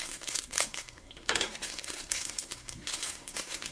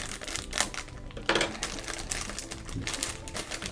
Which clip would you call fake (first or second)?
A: first